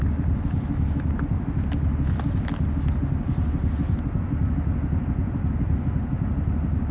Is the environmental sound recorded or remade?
recorded